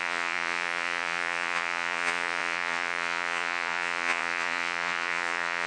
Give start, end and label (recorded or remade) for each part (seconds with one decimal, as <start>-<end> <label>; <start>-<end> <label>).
0.0-5.7 remade